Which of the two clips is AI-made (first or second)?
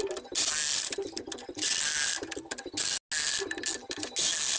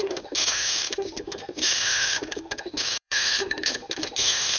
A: second